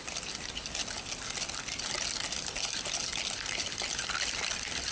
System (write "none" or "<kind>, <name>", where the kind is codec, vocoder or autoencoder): none